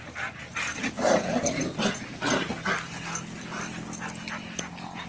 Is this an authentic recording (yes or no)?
yes